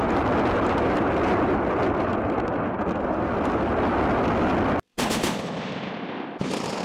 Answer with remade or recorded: recorded